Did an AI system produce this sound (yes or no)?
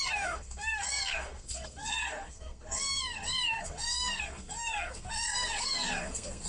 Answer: yes